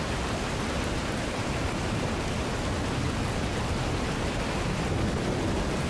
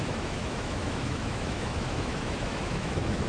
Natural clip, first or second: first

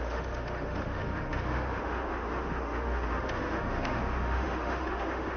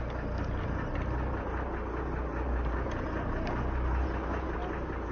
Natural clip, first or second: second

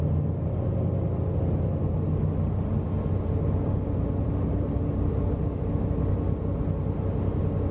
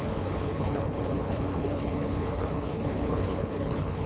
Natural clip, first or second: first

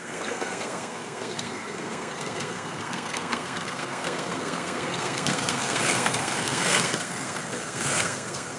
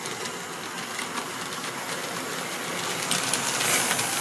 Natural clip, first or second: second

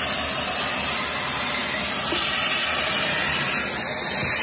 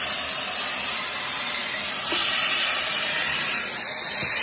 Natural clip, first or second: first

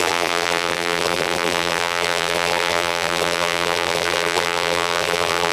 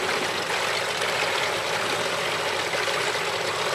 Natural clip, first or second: second